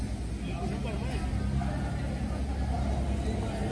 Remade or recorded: recorded